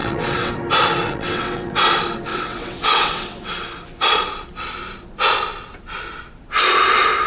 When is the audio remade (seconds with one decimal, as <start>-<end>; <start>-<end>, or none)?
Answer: 0.0-0.5; 1.0-1.8; 2.3-3.5

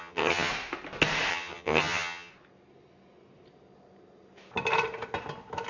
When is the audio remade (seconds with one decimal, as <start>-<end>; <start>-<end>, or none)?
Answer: 0.0-0.5; 1.3-2.3